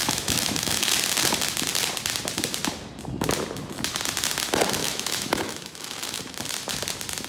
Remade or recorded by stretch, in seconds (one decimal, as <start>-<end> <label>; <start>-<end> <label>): 0.0-0.9 remade; 0.9-4.8 recorded; 4.8-6.2 remade; 6.2-7.3 recorded